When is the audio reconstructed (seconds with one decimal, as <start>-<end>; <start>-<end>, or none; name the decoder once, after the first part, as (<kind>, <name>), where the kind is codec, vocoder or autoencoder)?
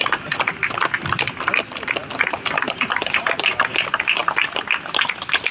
0.0-2.0 (vocoder, BigVGAN v2); 3.6-5.5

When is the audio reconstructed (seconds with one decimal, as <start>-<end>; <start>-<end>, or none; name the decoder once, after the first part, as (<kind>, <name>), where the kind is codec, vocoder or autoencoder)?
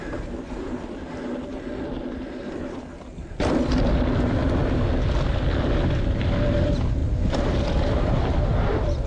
0.0-0.8 (vocoder, BigVGAN v2)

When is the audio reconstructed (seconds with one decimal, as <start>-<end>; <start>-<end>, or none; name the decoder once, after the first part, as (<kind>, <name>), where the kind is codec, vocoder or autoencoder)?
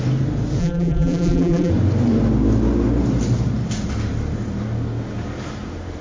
0.6-1.7 (vocoder, BigVGAN v2)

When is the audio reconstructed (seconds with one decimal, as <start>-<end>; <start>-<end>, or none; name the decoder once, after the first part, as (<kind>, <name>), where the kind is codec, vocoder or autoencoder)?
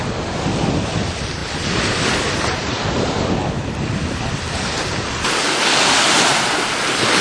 none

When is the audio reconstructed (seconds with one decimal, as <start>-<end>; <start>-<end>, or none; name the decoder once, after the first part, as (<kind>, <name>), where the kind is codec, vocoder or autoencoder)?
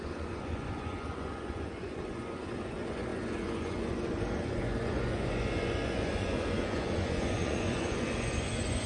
0.0-8.9 (vocoder, Vocos)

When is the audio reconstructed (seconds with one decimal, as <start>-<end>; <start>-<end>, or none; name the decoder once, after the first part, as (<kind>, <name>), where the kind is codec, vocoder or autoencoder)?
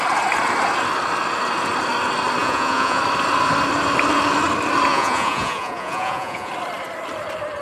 2.4-3.0 (vocoder, Vocos); 4.9-6.5